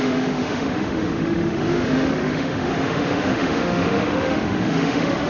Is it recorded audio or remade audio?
remade